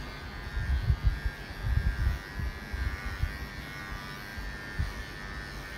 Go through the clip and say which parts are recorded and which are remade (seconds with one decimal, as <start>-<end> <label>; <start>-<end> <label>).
0.0-5.8 recorded